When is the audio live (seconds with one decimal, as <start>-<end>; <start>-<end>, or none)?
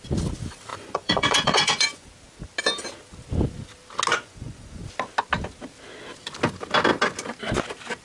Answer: 0.0-0.7; 2.1-4.1; 4.9-8.0